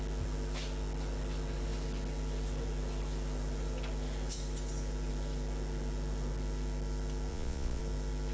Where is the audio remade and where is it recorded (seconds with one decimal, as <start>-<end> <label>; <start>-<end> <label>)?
0.0-7.3 recorded; 7.3-7.8 remade; 7.8-8.3 recorded